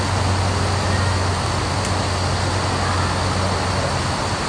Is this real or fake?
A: real